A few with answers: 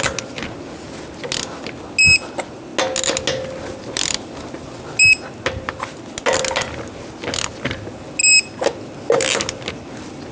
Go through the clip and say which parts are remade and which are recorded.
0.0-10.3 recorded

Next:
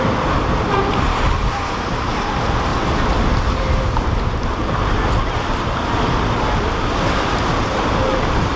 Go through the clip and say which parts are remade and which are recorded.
0.0-2.7 remade; 2.7-3.4 recorded; 3.4-4.6 remade; 4.6-7.1 recorded; 7.1-8.6 remade